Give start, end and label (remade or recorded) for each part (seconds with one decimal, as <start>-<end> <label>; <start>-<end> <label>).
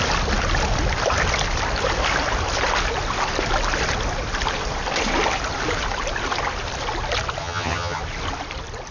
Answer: 0.0-7.4 recorded; 7.4-8.0 remade; 8.0-8.9 recorded